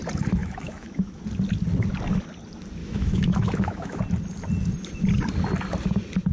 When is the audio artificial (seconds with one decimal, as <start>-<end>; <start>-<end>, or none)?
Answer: 0.4-1.2; 2.8-4.0